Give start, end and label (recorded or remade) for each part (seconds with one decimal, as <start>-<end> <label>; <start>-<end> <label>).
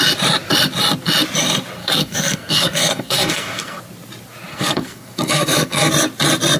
0.0-1.8 recorded; 1.8-3.8 remade; 3.8-4.5 recorded; 4.5-5.9 remade; 5.9-6.6 recorded